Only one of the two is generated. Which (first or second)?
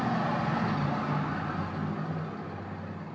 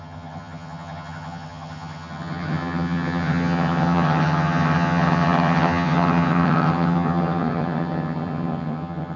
second